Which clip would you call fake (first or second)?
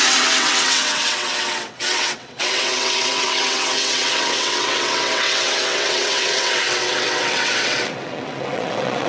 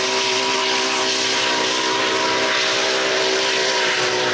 first